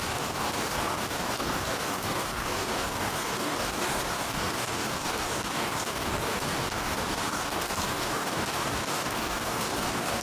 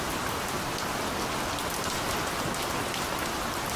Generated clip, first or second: first